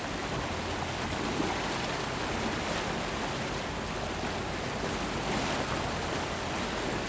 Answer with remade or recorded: recorded